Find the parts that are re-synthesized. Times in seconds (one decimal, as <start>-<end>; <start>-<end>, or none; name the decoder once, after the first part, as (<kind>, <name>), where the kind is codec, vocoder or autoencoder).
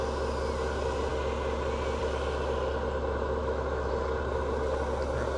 3.4-3.9 (autoencoder, DAC-VAE)